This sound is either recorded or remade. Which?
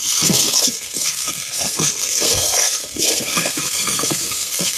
remade